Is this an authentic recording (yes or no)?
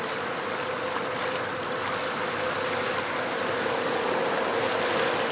yes